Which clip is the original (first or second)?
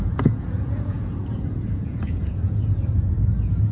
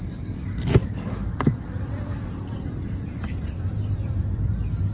second